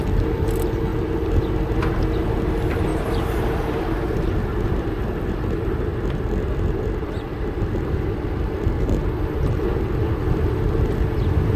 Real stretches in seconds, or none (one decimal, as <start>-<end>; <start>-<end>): 0.0-0.9; 1.7-2.9; 4.8-5.9; 9.1-11.6